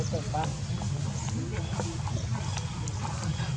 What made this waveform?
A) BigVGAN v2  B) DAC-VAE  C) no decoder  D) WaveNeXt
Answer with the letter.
C